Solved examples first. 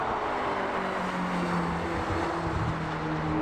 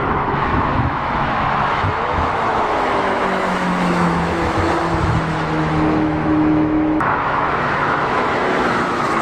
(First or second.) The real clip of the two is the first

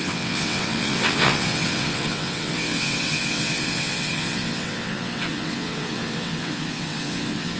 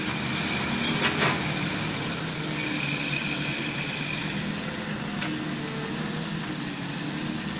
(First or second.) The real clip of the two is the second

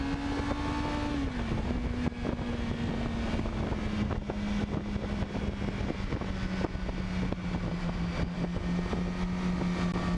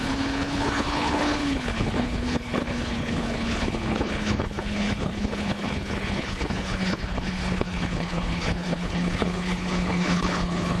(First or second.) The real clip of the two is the first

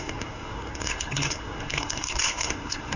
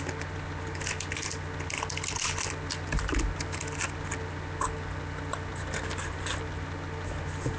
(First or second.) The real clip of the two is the second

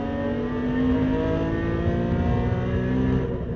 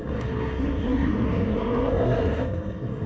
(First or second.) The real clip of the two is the first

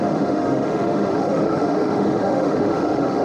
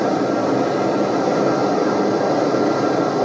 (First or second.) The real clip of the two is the second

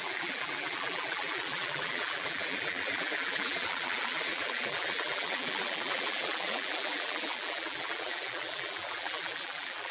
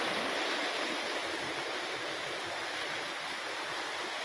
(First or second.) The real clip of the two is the second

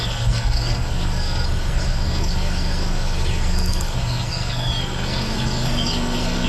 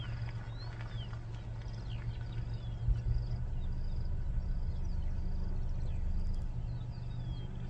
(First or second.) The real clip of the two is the second